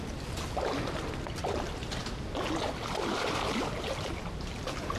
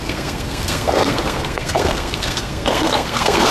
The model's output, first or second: second